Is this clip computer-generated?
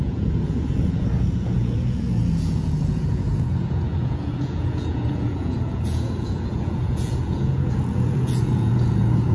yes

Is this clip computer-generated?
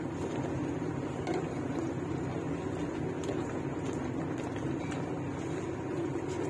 no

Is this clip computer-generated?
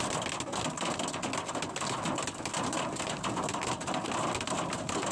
no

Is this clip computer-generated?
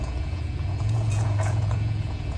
yes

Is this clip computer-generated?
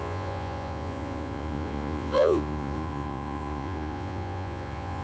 yes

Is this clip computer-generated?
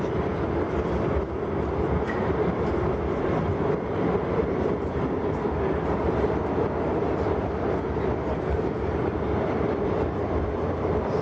no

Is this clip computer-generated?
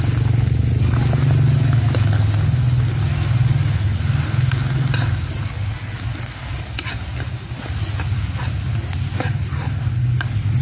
no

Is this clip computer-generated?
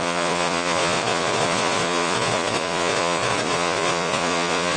yes